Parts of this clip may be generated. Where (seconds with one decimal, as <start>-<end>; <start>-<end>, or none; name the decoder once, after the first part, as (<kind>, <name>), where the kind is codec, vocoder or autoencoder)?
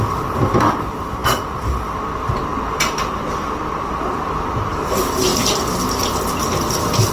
none